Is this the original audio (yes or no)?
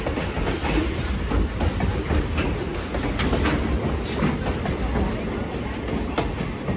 yes